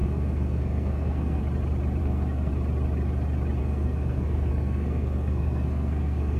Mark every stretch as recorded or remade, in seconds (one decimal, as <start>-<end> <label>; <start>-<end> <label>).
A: 0.0-1.4 remade; 1.4-2.0 recorded; 2.0-2.5 remade; 2.5-3.6 recorded; 3.6-6.4 remade

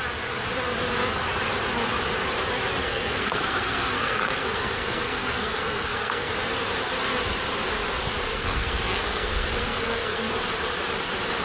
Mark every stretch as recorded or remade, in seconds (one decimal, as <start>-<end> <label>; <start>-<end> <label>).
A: 0.0-2.8 recorded; 2.8-6.3 remade; 6.3-8.3 recorded; 8.3-10.3 remade; 10.3-11.4 recorded